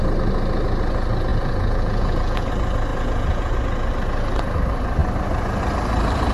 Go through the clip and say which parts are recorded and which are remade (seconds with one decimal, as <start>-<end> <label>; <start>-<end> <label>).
0.0-1.3 recorded; 1.3-2.5 remade; 2.5-2.9 recorded; 2.9-3.6 remade; 3.6-6.3 recorded